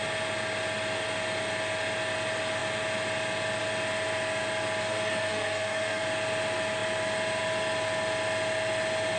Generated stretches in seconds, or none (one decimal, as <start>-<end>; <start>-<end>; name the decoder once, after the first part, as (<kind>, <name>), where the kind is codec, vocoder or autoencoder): 4.8-6.0 (codec, SNAC)